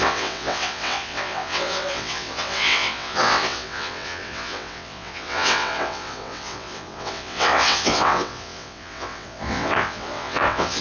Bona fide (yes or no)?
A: no